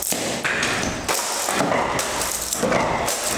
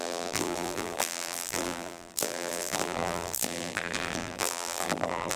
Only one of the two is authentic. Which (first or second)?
first